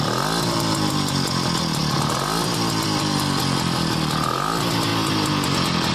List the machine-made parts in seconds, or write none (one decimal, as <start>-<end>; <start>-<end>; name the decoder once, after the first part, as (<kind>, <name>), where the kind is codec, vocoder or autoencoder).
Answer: none